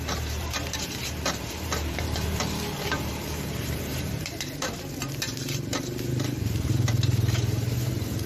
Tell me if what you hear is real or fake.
fake